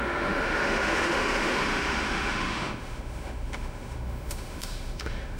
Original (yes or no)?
no